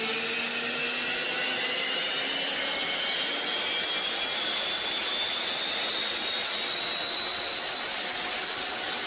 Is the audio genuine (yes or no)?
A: yes